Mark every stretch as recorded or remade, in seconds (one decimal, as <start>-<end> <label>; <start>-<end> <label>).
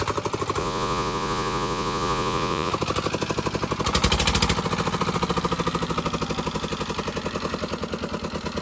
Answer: 0.0-0.6 recorded; 0.6-2.7 remade; 2.7-8.6 recorded